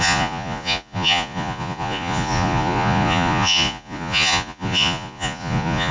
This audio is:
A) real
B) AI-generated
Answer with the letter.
B